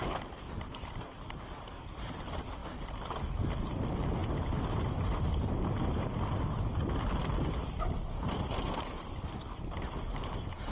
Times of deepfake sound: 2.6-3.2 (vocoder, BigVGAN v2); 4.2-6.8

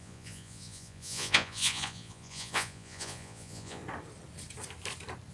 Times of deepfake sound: 0.0-3.8 (vocoder, Vocos)

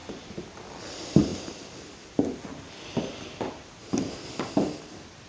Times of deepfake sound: none

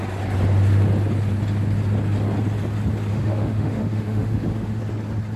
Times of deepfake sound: 3.1-4.8 (autoencoder, DAC-VAE)

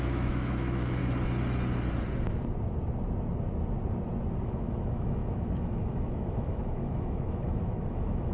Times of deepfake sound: 0.0-1.0 (autoencoder, DAC-VAE); 4.4-8.3

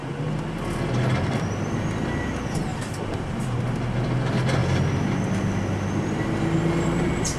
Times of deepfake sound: 2.7-3.6 (vocoder, BigVGAN v2)

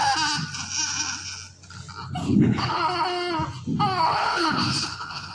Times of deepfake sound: 2.2-2.8 (codec, HILCodec); 4.2-5.3